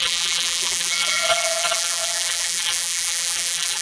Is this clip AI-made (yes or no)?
yes